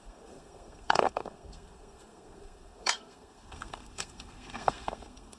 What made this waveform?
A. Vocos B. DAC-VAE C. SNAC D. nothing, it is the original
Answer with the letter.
C